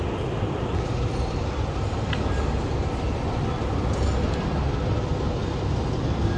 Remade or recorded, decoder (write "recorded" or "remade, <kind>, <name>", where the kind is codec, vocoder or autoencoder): recorded